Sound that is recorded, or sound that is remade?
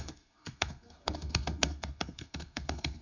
remade